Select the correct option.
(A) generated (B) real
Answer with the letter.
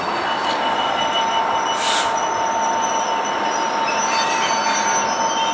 B